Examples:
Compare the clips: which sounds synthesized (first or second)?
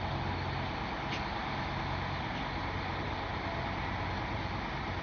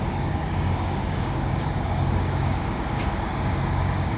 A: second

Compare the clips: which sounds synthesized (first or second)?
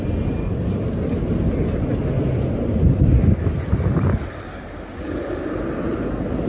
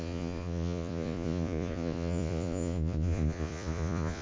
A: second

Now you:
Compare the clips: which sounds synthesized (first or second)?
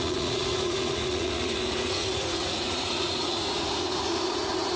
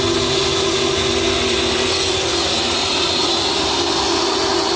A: first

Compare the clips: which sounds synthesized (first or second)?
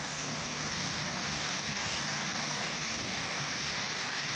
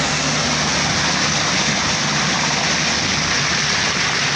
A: first